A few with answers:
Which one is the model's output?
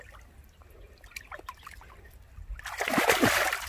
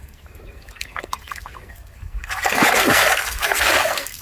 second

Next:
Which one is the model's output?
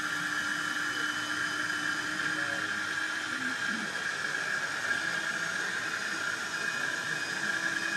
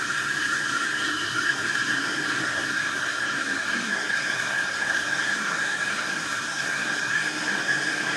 second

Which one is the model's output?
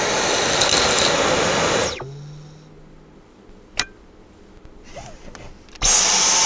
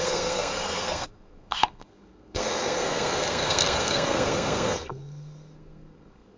second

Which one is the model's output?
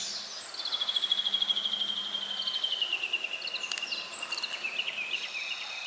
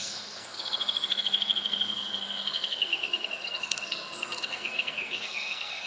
second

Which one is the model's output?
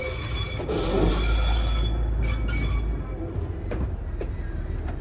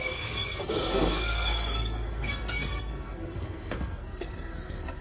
second